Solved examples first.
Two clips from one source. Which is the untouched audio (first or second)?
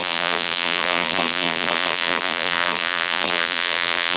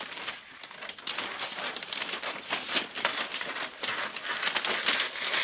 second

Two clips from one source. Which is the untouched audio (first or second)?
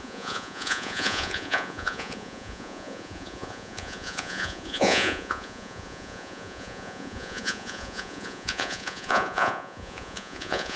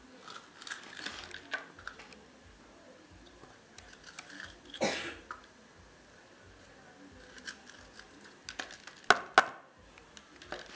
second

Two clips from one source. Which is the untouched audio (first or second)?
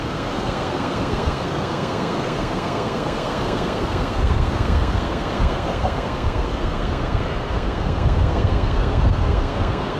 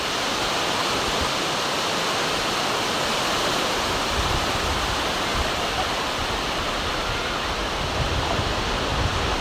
second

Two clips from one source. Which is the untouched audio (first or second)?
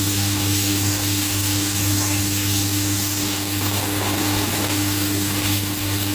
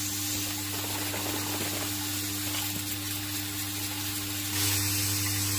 second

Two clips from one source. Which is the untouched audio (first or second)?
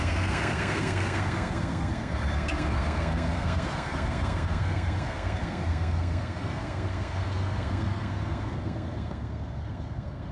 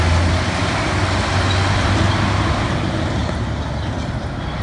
second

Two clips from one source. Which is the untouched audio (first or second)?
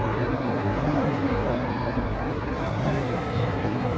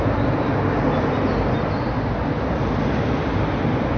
second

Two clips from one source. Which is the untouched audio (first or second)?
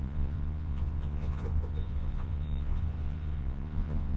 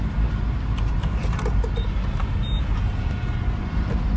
second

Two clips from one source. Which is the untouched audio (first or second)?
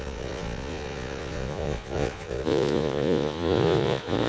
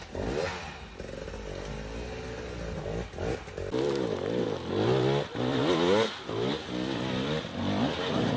second